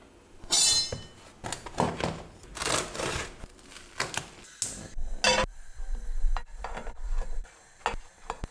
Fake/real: real